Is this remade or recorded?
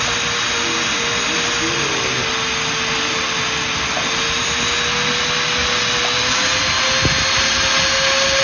recorded